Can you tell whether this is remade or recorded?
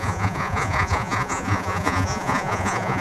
remade